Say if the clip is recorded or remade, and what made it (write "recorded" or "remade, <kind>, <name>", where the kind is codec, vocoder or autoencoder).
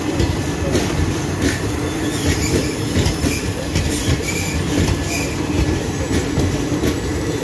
recorded